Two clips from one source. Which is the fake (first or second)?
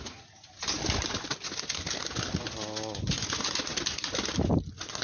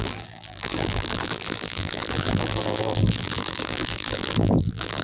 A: second